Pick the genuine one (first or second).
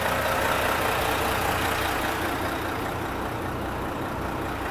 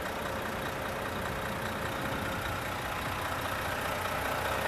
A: second